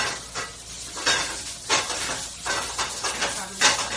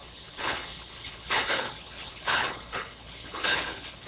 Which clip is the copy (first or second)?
second